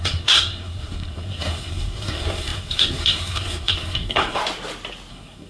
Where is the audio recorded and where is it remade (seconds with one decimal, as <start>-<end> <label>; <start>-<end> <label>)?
0.0-4.4 remade; 4.4-5.1 recorded; 5.1-5.5 remade